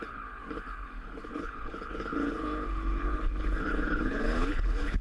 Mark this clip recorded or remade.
remade